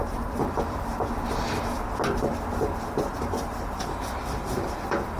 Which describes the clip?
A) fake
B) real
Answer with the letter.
B